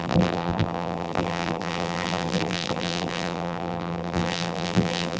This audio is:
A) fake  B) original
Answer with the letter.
A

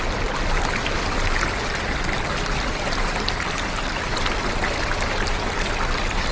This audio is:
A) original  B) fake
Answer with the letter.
A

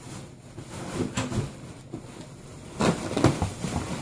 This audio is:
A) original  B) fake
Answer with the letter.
B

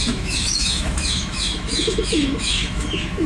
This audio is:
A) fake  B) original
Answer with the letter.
A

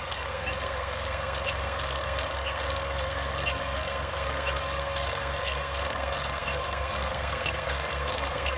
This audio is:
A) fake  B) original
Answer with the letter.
A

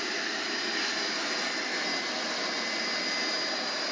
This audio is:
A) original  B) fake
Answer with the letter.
A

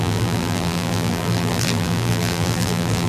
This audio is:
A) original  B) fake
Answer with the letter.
B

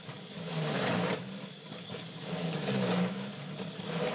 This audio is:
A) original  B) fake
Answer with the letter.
B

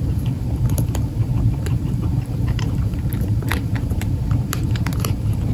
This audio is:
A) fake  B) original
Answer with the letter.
A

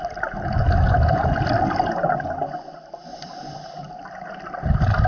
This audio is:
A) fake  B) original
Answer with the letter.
B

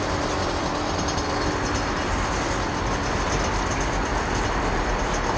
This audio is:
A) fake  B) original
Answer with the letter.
B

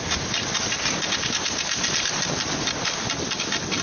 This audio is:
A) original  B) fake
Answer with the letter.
A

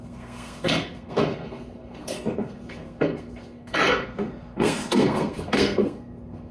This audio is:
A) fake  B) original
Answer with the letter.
A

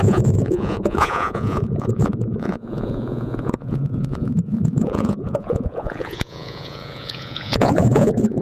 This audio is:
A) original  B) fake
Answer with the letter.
B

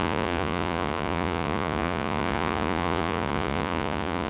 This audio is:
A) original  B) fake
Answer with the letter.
B